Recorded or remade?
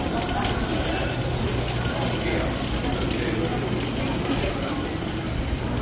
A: recorded